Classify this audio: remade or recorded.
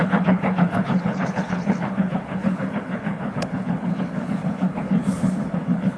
remade